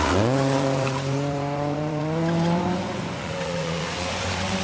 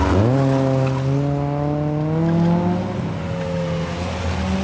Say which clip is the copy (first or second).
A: first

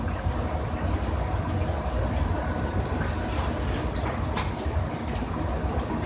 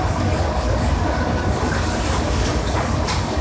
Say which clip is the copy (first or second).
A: second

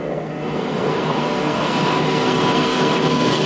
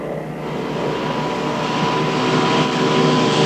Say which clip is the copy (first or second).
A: first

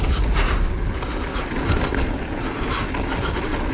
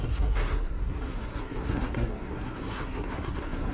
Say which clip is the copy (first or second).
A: second